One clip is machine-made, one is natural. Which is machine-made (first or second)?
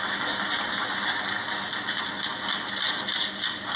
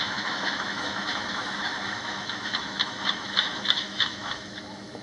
second